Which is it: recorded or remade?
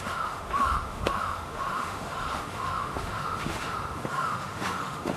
remade